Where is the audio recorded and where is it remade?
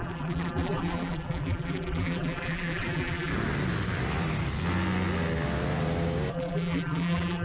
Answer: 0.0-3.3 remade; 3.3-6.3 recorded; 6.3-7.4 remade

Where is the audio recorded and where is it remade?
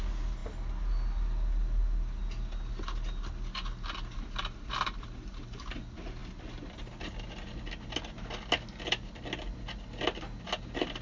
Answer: 0.0-11.0 recorded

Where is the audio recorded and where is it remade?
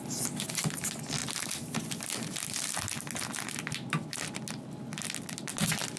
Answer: 0.0-6.0 recorded